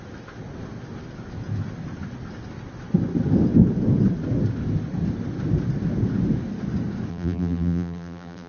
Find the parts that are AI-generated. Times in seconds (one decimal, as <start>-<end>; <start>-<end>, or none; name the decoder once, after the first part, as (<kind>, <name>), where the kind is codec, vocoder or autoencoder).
7.1-8.5 (vocoder, BigVGAN v2)